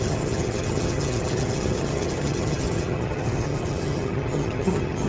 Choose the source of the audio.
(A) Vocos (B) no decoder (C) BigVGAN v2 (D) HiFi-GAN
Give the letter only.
D